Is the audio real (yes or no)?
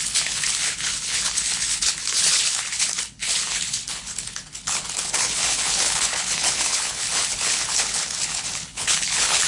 no